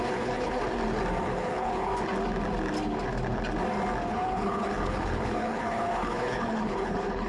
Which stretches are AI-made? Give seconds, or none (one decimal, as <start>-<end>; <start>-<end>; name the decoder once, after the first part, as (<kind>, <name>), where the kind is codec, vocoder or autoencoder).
0.0-0.6 (codec, HILCodec); 1.2-1.9; 4.1-7.3

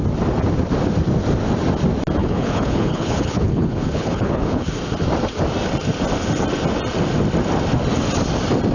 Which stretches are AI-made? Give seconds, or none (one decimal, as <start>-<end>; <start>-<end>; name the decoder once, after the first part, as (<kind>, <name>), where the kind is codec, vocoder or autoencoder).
2.2-4.7 (codec, HILCodec)

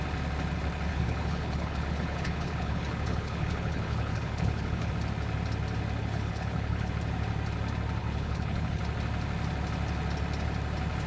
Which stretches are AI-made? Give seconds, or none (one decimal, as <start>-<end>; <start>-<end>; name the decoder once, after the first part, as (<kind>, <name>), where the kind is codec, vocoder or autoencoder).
0.9-4.9 (codec, HILCodec); 6.0-6.9; 8.0-8.8